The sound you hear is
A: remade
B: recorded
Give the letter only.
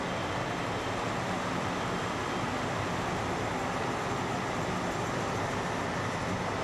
B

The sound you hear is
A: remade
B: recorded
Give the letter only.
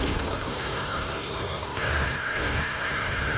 A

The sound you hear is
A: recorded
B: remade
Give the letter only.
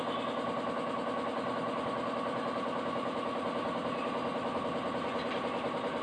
A